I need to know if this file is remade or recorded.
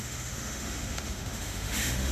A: remade